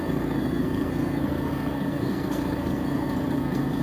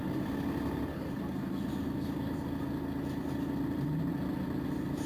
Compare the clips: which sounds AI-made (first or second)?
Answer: first